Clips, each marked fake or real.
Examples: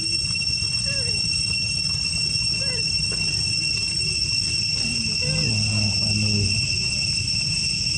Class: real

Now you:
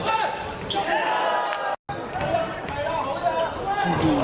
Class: real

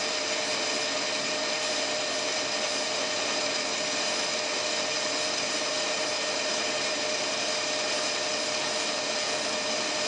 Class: fake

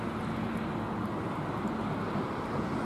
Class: real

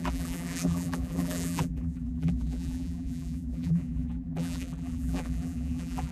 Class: fake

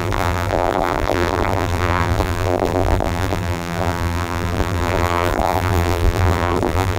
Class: fake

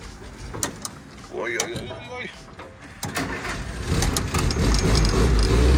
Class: real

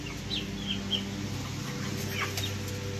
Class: real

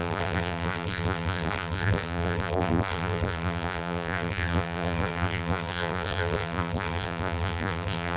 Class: fake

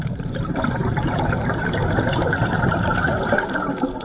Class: fake